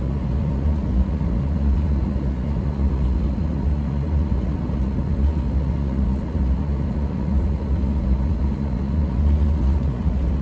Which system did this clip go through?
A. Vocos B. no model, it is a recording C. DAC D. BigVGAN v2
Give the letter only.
A